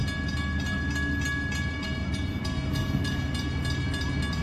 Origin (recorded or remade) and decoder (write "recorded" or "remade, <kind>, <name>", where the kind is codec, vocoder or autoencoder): recorded